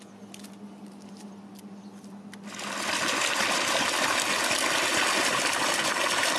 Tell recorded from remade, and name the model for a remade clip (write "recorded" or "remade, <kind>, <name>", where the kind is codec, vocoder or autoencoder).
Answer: recorded